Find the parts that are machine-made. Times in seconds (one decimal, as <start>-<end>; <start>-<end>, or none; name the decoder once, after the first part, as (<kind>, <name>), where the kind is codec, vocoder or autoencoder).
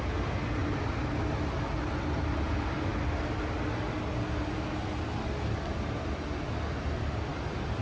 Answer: none